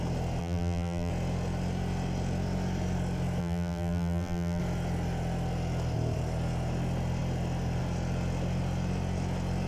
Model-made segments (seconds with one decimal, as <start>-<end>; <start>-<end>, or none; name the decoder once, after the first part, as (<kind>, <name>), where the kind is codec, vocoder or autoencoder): 0.4-1.1 (vocoder, BigVGAN v2); 3.4-4.6